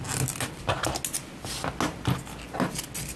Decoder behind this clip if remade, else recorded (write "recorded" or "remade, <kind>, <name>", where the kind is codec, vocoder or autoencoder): recorded